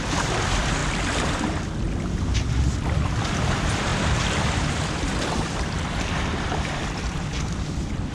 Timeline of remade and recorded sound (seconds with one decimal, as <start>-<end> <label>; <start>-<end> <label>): 0.0-0.8 remade; 0.8-2.8 recorded; 2.8-8.1 remade